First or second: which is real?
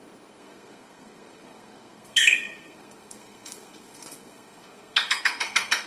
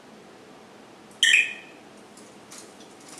second